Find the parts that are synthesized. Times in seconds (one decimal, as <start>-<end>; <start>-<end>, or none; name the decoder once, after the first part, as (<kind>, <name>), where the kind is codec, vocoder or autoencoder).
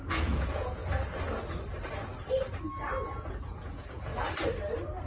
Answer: 0.0-0.8 (vocoder, Vocos); 3.3-4.1